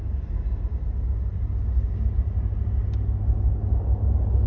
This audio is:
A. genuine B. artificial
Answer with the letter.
A